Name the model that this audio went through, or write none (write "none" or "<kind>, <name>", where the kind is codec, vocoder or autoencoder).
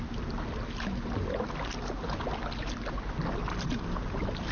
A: none